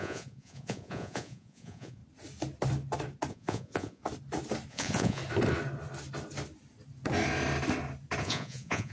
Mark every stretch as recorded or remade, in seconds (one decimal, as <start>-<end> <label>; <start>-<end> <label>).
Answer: 0.0-2.0 remade; 2.0-3.3 recorded; 3.3-4.0 remade; 4.0-4.7 recorded; 4.7-5.2 remade; 5.2-8.2 recorded; 8.2-8.9 remade